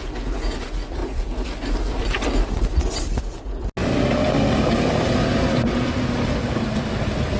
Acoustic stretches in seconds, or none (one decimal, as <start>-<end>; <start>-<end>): 0.0-1.0; 3.4-7.4